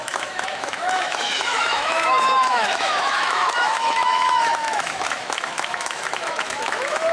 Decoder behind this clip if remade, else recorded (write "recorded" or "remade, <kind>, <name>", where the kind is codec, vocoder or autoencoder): remade, autoencoder, DAC-VAE